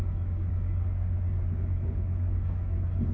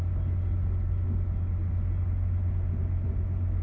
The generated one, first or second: first